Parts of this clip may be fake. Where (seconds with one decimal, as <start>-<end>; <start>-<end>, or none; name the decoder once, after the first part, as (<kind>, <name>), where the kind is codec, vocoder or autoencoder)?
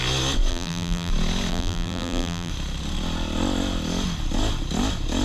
0.5-1.1 (vocoder, BigVGAN v2); 1.5-2.5